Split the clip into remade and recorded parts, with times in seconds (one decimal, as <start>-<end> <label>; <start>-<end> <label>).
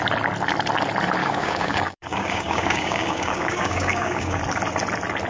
0.0-1.2 recorded; 1.2-4.4 remade; 4.4-5.3 recorded